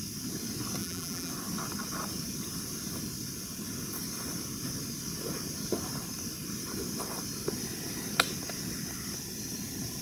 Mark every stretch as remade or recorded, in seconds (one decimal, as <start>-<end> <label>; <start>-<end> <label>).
0.0-0.8 recorded; 0.8-1.3 remade; 1.3-10.0 recorded